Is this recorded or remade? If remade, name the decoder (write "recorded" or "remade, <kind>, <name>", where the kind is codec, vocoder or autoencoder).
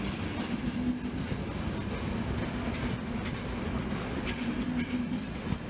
recorded